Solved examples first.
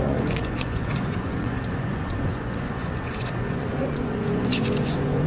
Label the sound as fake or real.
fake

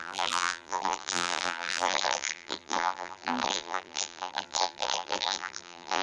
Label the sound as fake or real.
fake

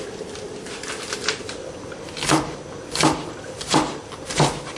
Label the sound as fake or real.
fake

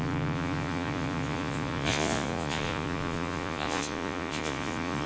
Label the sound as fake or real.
fake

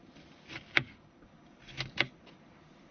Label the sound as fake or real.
real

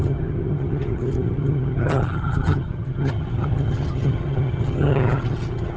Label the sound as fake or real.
fake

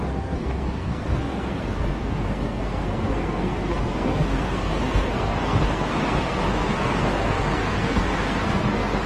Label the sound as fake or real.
fake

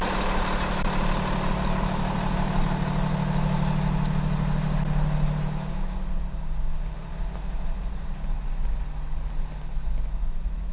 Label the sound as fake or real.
real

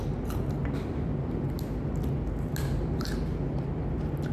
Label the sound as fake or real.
real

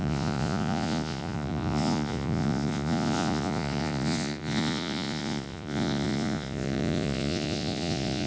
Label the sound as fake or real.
fake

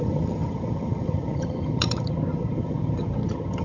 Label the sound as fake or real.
fake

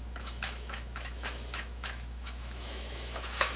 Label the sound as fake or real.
fake